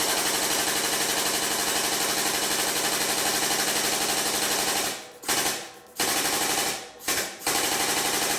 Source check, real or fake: real